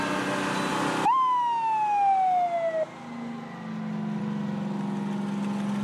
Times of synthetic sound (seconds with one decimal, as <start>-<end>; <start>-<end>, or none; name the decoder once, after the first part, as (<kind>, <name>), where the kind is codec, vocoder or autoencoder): none